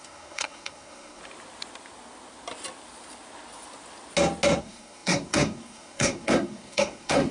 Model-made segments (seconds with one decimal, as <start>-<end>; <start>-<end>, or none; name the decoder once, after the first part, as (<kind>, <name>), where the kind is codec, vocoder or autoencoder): 0.0-1.2 (codec, SNAC); 4.6-7.3